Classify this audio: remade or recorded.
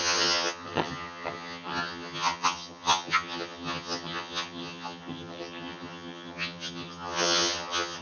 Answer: remade